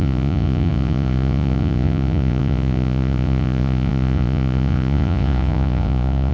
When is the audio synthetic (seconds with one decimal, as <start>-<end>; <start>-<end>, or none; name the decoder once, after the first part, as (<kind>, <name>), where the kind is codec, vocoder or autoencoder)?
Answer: 0.0-6.3 (vocoder, Vocos)